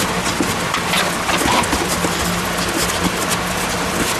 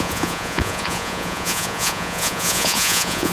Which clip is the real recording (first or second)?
first